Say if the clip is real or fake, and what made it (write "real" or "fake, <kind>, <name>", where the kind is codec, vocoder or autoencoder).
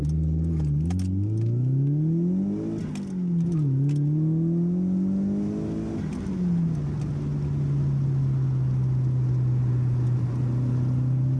real